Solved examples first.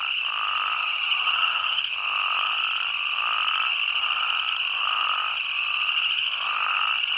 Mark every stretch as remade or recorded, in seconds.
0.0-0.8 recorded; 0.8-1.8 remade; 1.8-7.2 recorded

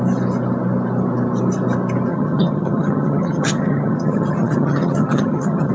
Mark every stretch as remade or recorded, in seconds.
0.0-2.1 recorded; 2.1-5.7 remade

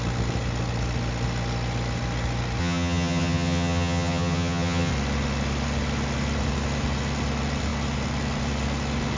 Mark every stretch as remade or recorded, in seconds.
0.0-2.6 recorded; 2.6-4.9 remade; 4.9-9.2 recorded

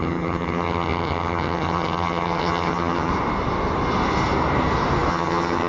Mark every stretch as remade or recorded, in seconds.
0.0-3.1 remade; 3.1-5.1 recorded; 5.1-5.7 remade

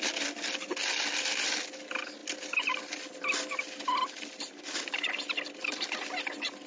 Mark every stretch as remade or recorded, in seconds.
0.0-6.7 recorded

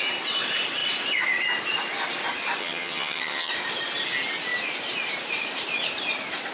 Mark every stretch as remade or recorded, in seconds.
0.0-2.6 recorded; 2.6-3.5 remade; 3.5-6.5 recorded

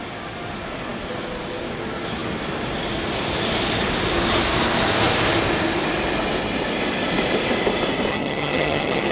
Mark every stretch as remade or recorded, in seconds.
0.0-8.1 recorded; 8.1-9.1 remade